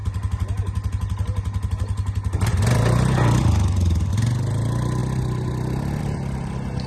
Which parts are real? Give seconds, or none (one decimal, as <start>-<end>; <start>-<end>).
0.0-6.9